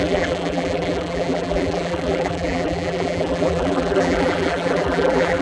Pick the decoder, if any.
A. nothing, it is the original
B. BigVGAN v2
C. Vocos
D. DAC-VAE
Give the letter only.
B